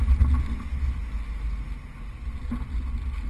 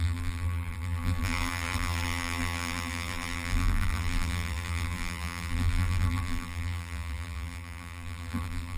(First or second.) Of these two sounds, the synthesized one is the second